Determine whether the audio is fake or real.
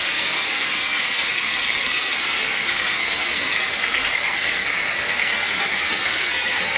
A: fake